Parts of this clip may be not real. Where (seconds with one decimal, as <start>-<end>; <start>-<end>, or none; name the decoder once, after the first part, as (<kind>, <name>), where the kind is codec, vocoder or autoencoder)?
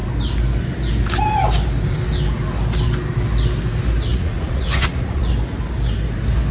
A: 4.1-5.3 (vocoder, Vocos)